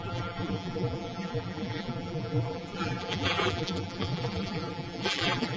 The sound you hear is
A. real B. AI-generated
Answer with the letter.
B